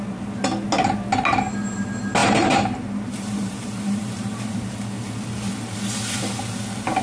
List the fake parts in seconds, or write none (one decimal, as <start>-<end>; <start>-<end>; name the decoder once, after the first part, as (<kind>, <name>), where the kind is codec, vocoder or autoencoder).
2.2-6.4 (vocoder, BigVGAN v2)